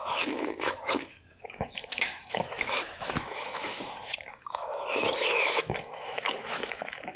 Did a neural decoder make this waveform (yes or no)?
yes